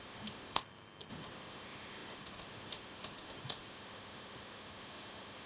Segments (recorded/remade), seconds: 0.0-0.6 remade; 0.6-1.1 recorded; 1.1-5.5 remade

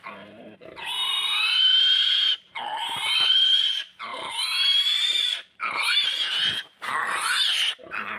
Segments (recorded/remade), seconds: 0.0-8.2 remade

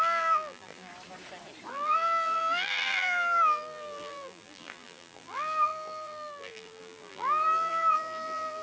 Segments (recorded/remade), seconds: 0.0-0.9 remade; 0.9-1.7 recorded; 1.7-8.6 remade

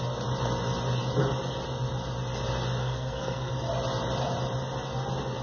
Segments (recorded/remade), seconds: 0.0-2.8 recorded; 2.8-3.5 remade; 3.5-5.4 recorded

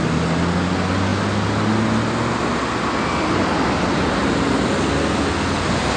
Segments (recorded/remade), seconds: 0.0-6.0 recorded

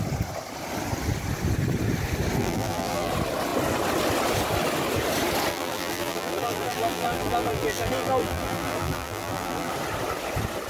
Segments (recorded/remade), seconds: 0.0-2.4 recorded; 2.4-3.1 remade; 3.1-5.5 recorded; 5.5-9.7 remade; 9.7-10.7 recorded

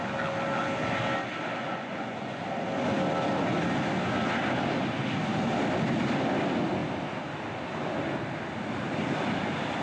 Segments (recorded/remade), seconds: 0.0-1.6 recorded; 1.6-2.4 remade; 2.4-9.8 recorded